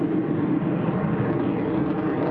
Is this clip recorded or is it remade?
recorded